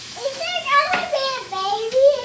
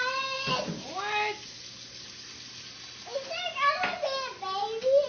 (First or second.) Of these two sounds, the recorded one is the second